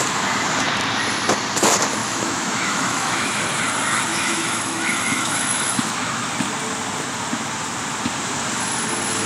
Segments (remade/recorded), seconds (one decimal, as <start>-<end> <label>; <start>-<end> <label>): 0.0-2.0 recorded; 2.0-3.4 remade; 3.4-4.1 recorded; 4.1-6.3 remade; 6.3-9.3 recorded